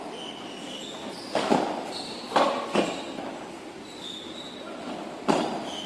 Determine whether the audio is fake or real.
real